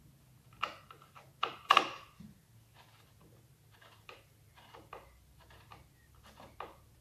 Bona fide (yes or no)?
yes